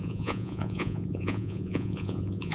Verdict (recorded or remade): remade